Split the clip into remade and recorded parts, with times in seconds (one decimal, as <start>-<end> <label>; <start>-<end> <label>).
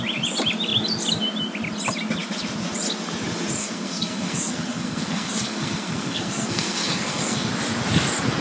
0.0-3.6 recorded; 3.6-7.5 remade; 7.5-8.4 recorded